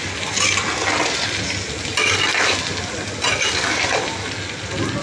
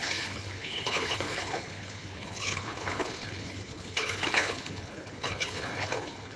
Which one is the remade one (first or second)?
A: second